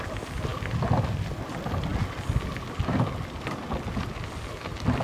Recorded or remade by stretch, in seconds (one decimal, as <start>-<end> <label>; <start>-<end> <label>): 0.0-5.0 recorded